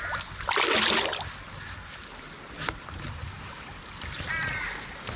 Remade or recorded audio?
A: recorded